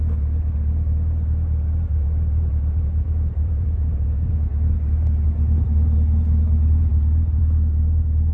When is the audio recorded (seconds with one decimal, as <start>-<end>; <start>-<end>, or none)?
0.0-1.9; 4.3-8.3